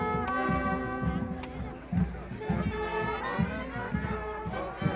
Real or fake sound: real